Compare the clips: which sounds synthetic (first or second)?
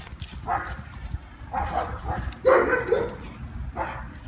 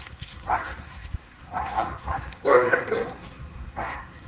second